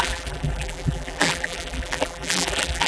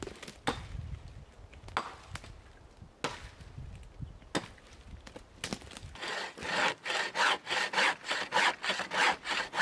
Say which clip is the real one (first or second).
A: second